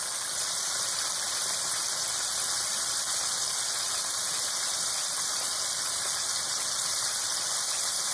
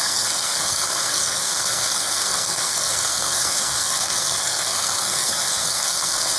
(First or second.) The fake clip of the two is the second